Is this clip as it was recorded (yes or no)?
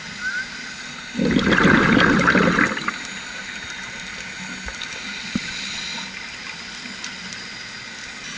yes